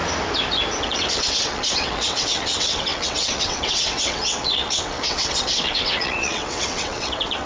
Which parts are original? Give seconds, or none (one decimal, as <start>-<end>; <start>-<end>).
0.0-0.8

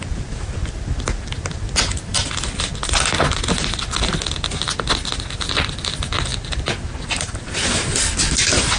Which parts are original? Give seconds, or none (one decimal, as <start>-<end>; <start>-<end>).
0.0-8.8

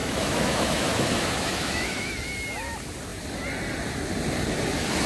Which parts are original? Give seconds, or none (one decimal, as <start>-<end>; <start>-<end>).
2.1-5.1

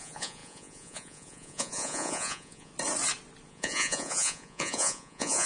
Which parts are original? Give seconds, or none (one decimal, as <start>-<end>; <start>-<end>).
2.7-3.5

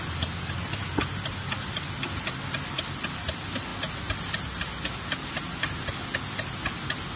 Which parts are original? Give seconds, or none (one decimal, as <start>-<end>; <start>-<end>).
0.8-2.9; 3.7-7.2

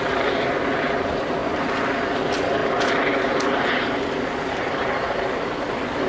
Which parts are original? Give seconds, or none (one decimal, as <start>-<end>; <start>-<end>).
0.0-6.1

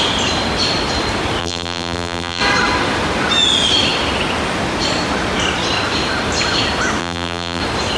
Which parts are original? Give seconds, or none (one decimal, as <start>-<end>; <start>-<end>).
0.0-1.4; 2.4-7.0; 7.6-8.0